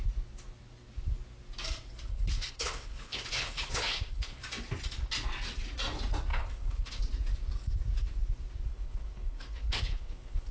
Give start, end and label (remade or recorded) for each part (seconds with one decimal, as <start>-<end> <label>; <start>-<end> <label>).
0.0-2.1 recorded; 2.1-4.4 remade; 4.4-6.3 recorded; 6.3-7.0 remade; 7.0-8.7 recorded; 8.7-10.5 remade